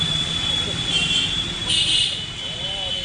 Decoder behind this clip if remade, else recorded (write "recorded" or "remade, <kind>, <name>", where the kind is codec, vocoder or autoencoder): recorded